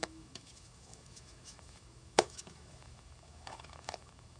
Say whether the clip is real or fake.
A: fake